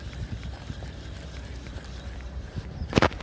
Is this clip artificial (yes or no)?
no